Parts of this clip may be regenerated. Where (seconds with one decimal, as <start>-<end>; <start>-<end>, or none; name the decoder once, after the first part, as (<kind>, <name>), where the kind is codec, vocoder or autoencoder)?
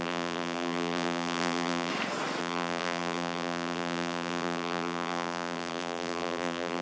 0.0-1.9 (vocoder, BigVGAN v2); 2.4-6.8